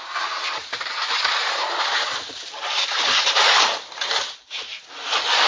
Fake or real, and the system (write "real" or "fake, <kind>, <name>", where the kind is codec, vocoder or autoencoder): fake, vocoder, BigVGAN v2